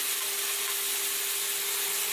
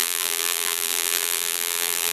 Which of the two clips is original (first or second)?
first